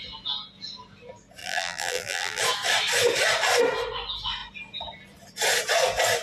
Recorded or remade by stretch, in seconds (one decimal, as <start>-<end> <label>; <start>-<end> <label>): 0.0-1.4 recorded; 1.4-2.4 remade; 2.4-6.2 recorded